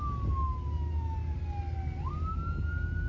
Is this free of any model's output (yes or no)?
yes